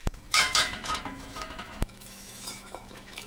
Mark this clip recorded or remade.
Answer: remade